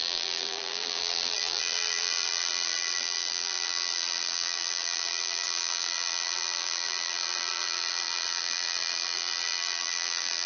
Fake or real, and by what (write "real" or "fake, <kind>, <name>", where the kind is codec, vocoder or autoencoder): fake, vocoder, BigVGAN v2